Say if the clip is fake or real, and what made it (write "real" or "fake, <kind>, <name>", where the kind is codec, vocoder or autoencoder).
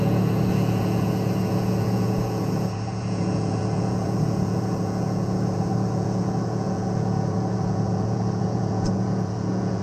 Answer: fake, vocoder, Vocos